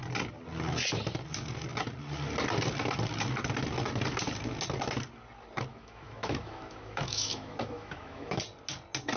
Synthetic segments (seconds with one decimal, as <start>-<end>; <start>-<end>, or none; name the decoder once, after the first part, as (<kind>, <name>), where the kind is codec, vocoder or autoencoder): 5.7-8.4 (autoencoder, DAC-VAE)